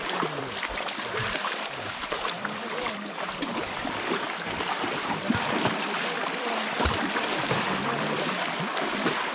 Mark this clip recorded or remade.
remade